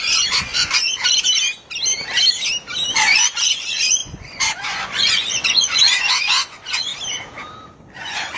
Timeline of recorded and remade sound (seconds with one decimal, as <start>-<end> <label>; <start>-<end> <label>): 0.0-0.9 remade; 0.9-2.9 recorded; 2.9-6.9 remade; 6.9-8.0 recorded; 8.0-8.4 remade